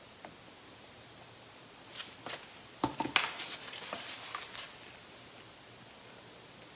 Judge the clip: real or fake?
real